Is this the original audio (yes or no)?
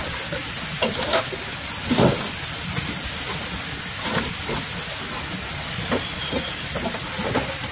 yes